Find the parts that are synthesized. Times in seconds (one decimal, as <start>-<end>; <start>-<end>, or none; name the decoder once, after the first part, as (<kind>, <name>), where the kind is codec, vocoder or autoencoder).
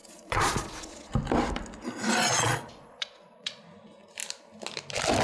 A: 0.0-1.1 (vocoder, Vocos); 2.3-3.6